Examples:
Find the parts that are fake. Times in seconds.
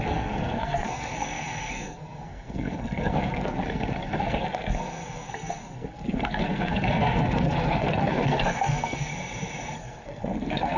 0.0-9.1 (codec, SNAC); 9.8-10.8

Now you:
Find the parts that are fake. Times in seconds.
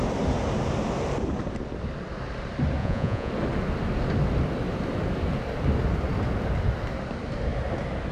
2.8-3.3 (vocoder, Vocos)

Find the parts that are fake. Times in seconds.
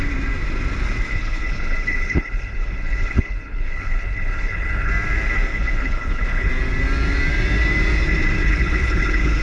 1.1-4.9 (codec, HILCodec); 5.5-6.5; 8.4-9.4